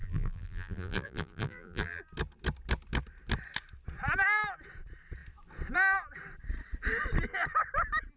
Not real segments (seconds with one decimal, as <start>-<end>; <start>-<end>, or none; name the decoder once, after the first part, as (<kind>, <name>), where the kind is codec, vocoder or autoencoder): 0.0-2.0 (vocoder, BigVGAN v2)